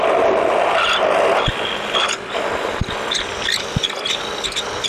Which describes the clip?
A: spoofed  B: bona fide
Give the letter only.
B